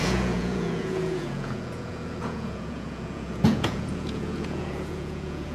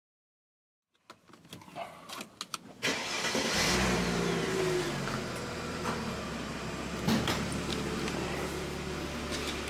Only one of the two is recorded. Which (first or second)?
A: second